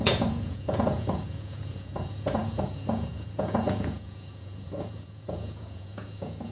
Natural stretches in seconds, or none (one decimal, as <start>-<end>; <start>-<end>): none